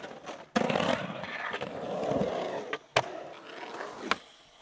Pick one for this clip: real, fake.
real